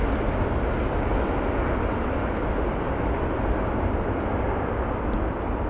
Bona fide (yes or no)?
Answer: yes